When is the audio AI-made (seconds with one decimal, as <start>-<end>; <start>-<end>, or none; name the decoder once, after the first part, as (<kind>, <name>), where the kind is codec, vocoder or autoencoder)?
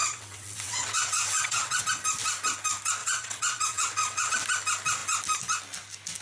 0.0-1.8 (vocoder, WaveNeXt); 3.0-4.3